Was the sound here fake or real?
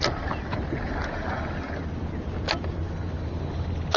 real